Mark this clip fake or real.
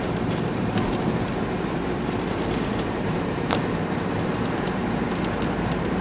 fake